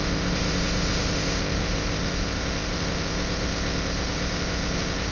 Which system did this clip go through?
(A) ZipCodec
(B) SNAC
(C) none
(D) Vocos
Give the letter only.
A